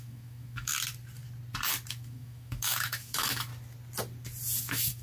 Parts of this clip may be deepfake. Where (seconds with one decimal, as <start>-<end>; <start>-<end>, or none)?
0.0-0.7; 1.9-3.5; 4.6-5.0